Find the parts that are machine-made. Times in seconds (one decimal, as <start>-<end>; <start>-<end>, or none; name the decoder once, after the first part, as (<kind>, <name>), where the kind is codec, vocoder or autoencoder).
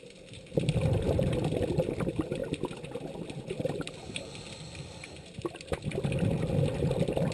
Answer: none